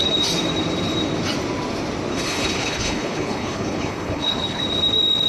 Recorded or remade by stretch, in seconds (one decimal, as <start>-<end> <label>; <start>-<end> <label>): 0.0-2.1 recorded; 2.1-4.6 remade; 4.6-5.3 recorded